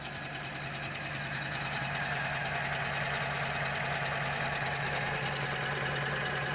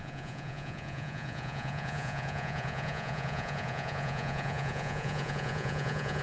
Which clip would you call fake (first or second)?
second